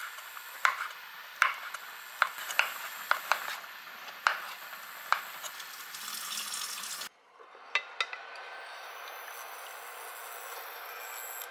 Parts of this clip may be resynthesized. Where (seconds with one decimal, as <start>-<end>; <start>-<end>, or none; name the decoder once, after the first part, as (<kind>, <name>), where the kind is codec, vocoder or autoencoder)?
none